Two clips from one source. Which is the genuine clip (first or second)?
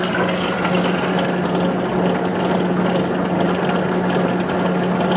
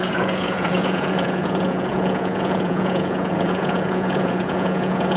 first